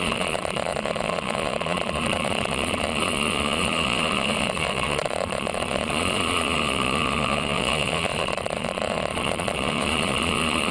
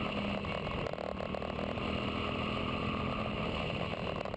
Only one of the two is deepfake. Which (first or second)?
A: first